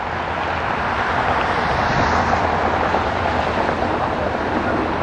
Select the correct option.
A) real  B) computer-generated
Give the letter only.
A